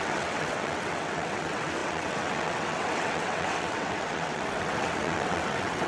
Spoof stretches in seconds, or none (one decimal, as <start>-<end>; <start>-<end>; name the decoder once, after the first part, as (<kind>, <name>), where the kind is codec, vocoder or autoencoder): 0.0-5.9 (vocoder, WaveNeXt)